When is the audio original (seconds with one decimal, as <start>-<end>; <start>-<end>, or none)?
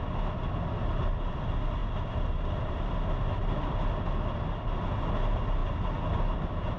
0.0-6.8